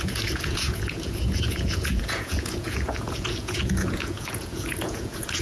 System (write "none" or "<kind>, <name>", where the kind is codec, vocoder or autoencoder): vocoder, Vocos